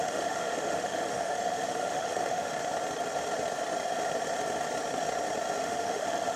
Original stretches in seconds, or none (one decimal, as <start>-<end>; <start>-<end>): 2.5-5.6